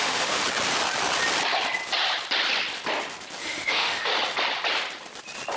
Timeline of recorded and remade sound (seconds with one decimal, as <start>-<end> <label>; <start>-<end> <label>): 0.0-0.4 remade; 0.4-3.4 recorded; 3.4-4.1 remade; 4.1-5.6 recorded